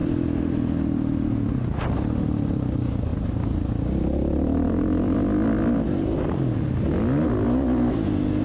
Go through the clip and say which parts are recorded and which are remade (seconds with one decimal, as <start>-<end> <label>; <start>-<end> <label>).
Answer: 0.0-8.4 recorded